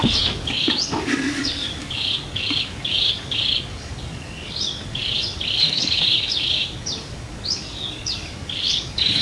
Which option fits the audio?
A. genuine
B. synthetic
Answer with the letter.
B